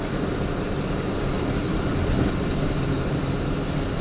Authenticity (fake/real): real